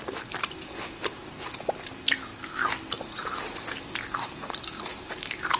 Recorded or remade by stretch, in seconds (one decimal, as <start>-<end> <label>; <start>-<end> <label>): 0.0-5.6 recorded